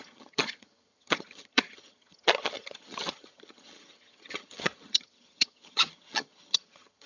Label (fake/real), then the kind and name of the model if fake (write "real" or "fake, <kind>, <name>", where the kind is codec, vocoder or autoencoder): fake, vocoder, HiFi-GAN